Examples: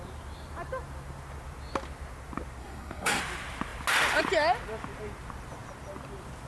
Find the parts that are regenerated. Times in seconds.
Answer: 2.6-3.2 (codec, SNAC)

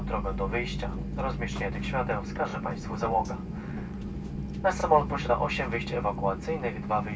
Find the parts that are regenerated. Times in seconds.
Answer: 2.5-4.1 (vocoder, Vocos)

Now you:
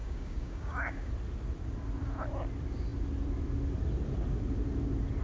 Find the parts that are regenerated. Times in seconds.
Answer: 0.0-1.1 (codec, DAC)

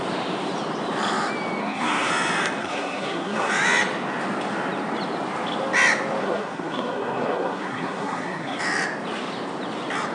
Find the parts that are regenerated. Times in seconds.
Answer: 1.6-2.1 (codec, SNAC); 2.6-3.5; 6.2-8.6

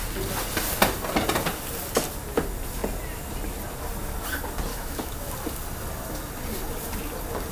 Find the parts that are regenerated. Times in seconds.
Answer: 4.7-5.2 (autoencoder, DAC-VAE)

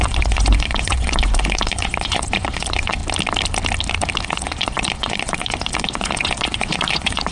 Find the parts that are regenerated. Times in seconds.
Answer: 0.0-3.0 (vocoder, Vocos); 4.2-7.3

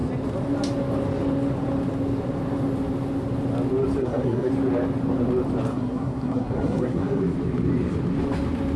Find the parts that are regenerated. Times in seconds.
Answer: 4.0-4.5 (codec, SNAC); 5.7-7.2

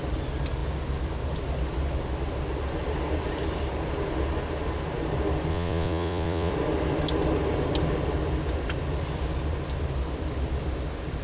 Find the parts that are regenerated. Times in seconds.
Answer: 5.5-6.5 (vocoder, Vocos)